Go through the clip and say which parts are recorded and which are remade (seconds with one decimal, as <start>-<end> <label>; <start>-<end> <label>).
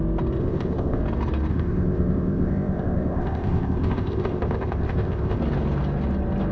0.0-0.4 recorded; 0.4-1.0 remade; 1.0-1.5 recorded; 1.5-5.4 remade; 5.4-6.5 recorded